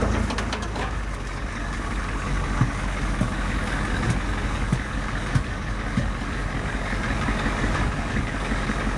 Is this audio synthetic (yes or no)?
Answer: yes